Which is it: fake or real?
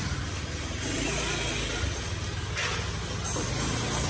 real